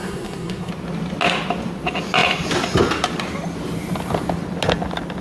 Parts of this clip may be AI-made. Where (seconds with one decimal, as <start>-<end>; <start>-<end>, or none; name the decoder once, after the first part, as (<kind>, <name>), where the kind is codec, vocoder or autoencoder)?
0.0-0.7 (codec, SNAC)